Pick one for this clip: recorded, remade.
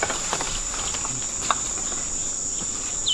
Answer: recorded